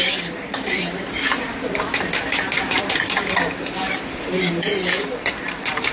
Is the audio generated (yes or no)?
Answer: yes